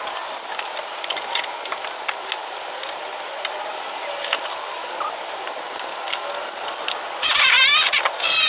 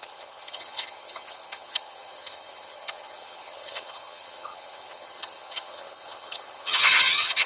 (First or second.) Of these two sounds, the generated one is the second